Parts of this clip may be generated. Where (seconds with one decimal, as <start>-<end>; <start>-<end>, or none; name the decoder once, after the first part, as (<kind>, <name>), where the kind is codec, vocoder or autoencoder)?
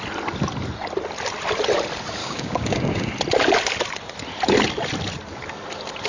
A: 2.2-3.1 (codec, DAC)